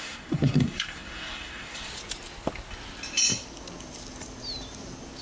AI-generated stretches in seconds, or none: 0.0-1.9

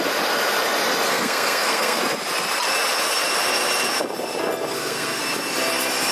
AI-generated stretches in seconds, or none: 1.1-2.0; 4.7-5.2